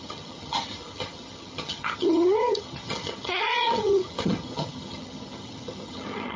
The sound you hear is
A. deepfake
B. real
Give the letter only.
A